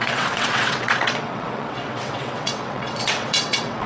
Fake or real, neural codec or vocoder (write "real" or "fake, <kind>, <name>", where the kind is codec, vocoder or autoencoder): fake, vocoder, WaveNeXt